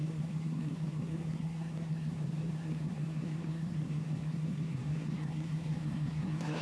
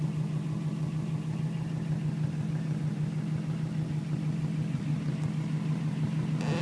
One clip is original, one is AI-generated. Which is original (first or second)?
second